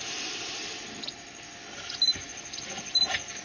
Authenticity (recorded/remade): recorded